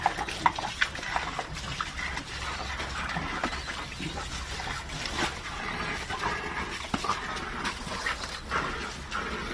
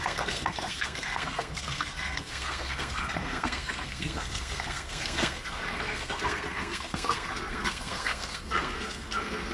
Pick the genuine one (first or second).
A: first